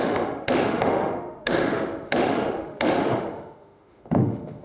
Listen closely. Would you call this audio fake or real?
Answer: fake